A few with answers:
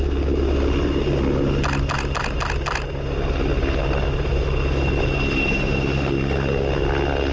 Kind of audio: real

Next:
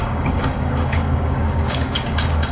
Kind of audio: fake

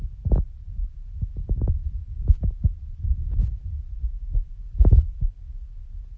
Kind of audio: real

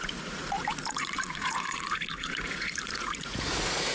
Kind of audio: fake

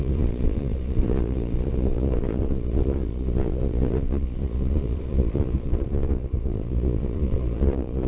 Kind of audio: fake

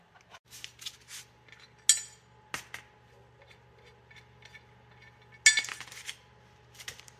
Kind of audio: real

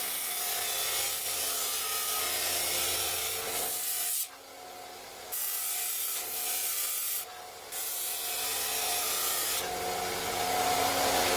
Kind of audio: real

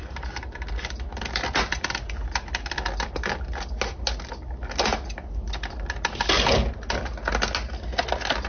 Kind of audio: real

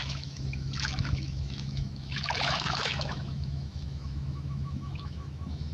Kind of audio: fake